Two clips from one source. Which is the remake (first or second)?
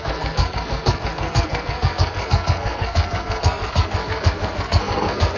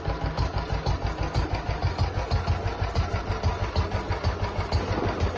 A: first